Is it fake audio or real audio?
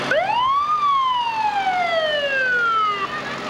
real